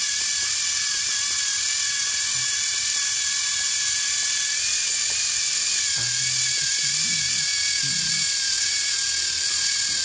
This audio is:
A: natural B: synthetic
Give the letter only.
A